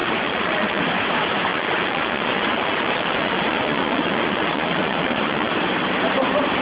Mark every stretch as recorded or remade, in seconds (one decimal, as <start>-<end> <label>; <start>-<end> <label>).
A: 0.0-0.8 remade; 0.8-1.5 recorded; 1.5-5.5 remade; 5.5-6.6 recorded